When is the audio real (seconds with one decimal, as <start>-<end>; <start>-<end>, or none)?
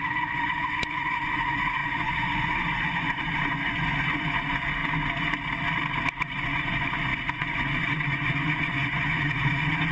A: 4.8-6.2